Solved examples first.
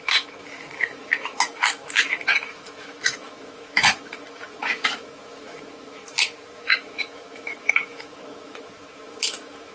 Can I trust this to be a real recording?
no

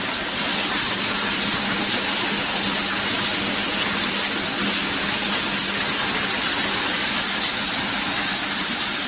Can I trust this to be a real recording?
yes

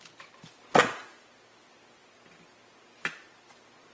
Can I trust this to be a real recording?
yes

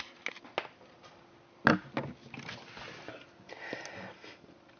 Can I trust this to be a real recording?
yes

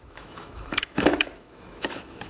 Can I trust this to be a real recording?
no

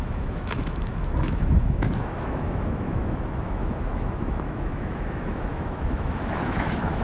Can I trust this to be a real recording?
no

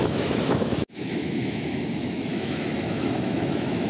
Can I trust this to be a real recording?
no